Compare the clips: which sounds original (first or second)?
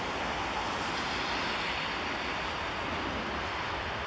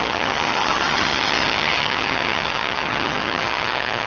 first